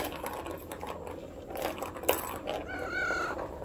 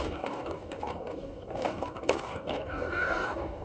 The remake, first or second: second